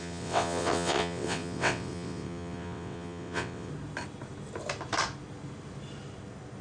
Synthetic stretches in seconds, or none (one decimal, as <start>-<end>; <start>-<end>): 0.0-3.7